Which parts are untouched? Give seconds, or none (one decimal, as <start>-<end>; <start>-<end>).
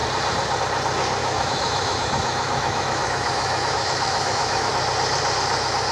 0.0-1.2; 4.7-5.9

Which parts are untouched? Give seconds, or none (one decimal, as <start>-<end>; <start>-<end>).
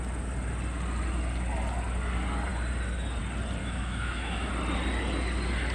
0.0-3.6; 4.5-5.7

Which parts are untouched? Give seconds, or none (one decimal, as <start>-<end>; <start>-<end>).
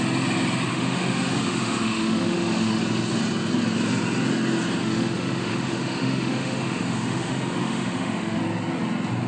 0.0-0.7; 2.8-4.8; 8.4-9.3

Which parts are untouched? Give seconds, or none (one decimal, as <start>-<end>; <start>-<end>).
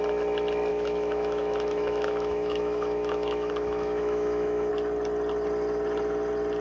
0.0-0.7; 4.7-6.6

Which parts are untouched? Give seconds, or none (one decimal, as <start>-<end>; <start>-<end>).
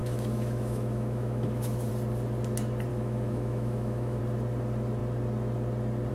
1.9-2.9; 4.2-6.1